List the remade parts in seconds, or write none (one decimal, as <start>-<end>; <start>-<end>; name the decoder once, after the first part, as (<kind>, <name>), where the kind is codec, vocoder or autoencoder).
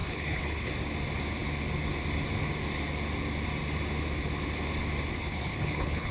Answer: 0.0-0.7 (codec, HILCodec); 5.2-6.1